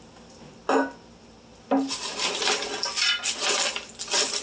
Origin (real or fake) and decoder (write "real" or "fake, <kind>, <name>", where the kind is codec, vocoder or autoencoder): real